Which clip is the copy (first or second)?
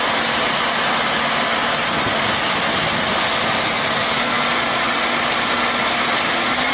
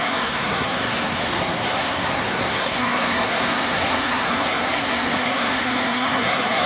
second